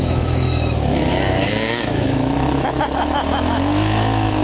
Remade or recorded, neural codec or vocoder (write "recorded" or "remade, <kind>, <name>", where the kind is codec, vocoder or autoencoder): remade, autoencoder, DAC-VAE